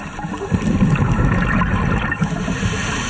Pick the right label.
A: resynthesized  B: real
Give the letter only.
B